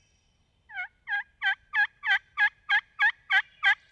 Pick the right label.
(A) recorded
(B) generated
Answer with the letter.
A